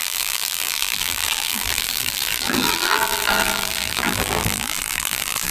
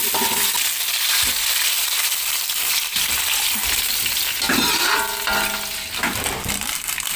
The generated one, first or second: first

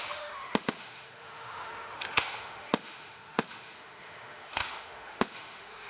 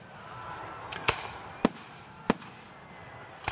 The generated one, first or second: first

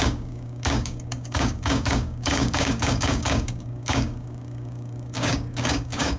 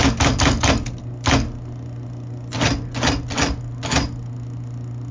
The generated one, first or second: first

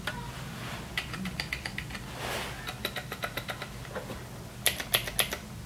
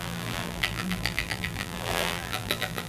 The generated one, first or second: second